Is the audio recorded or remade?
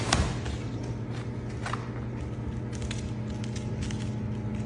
recorded